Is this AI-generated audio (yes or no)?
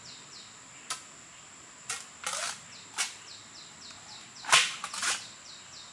no